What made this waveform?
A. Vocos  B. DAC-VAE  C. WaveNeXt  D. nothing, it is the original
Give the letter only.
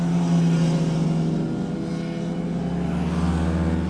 D